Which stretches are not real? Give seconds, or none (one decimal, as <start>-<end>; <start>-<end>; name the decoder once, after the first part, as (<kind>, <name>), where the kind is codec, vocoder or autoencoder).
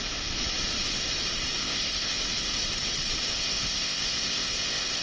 1.6-2.2 (codec, ZipCodec); 3.3-5.0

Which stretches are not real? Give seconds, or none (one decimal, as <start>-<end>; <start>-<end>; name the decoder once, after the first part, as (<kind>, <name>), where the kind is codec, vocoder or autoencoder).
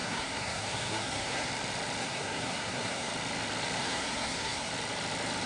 0.0-1.5 (codec, SNAC); 2.0-3.1; 3.8-4.7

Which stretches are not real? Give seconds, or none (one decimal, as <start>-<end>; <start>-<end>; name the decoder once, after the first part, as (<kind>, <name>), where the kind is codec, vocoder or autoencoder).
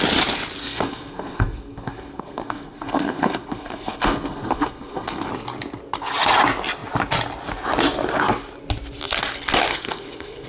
0.6-5.3 (codec, SNAC); 9.7-10.5